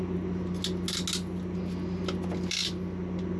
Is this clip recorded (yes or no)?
yes